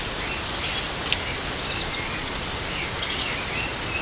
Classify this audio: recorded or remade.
recorded